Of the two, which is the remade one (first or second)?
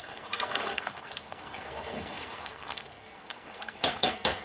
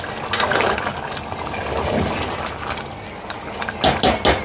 first